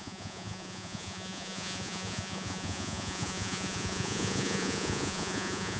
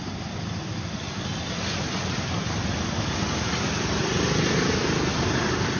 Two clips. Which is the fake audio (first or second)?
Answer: first